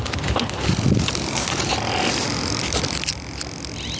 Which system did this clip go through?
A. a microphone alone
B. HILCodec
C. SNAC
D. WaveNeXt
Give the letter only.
A